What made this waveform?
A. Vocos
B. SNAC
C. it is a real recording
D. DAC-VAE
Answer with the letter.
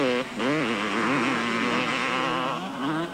C